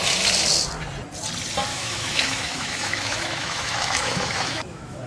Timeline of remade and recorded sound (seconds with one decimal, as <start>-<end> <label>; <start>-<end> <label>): 0.0-1.7 recorded; 1.7-5.1 remade